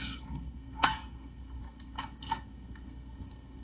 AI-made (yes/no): yes